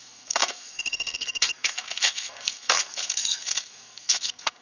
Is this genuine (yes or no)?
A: no